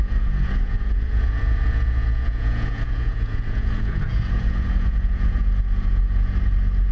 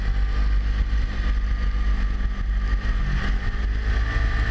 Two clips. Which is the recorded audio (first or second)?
second